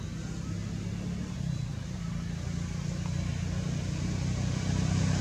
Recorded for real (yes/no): yes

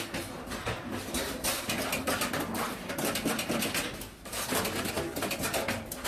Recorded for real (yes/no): yes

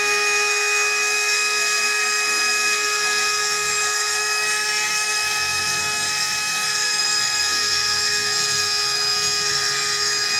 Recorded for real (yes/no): no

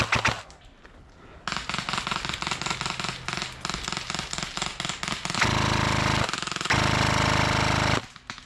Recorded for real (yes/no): yes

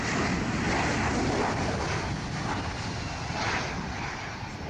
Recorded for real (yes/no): yes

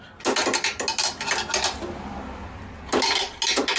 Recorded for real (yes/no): yes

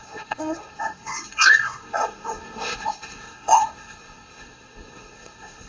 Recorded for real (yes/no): no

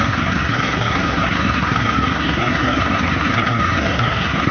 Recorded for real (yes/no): no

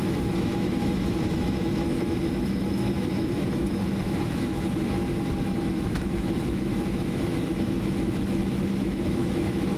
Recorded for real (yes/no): no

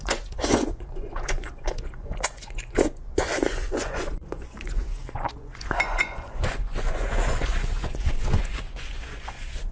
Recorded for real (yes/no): no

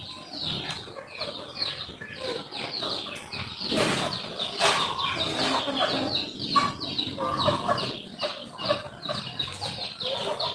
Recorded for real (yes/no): yes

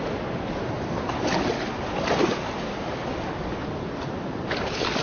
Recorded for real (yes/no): yes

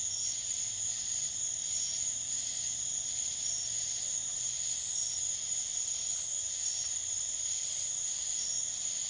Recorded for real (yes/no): no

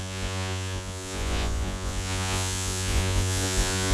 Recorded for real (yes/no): no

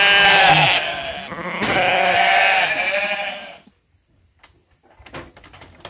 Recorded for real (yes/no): yes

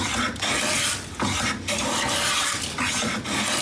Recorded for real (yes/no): yes